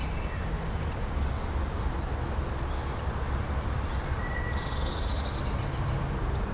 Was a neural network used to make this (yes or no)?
no